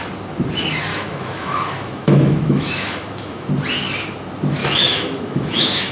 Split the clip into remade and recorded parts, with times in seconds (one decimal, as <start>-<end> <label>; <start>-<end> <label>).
0.0-0.9 recorded; 0.9-3.5 remade; 3.5-4.6 recorded; 4.6-5.9 remade